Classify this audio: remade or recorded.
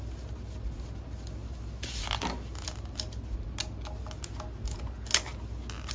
recorded